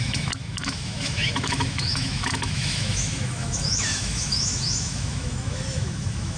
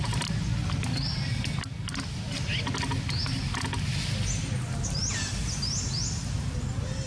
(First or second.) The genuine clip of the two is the second